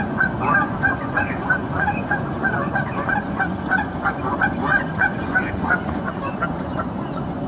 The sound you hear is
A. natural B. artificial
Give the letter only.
B